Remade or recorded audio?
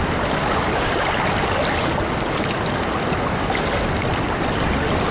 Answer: recorded